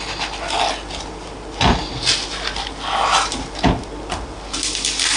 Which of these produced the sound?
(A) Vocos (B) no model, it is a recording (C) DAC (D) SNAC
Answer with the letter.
B